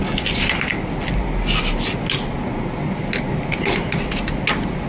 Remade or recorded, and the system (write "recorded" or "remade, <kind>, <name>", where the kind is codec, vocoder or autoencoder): recorded